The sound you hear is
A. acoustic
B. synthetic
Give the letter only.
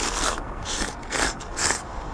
B